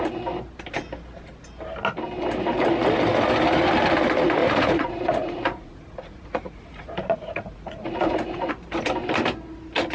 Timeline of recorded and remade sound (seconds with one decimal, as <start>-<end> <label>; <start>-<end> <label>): 0.0-4.4 recorded; 4.4-8.5 remade; 8.5-9.9 recorded